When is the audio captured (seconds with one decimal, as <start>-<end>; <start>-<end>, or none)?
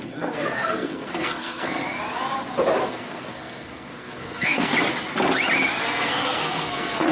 1.8-2.9; 4.7-5.8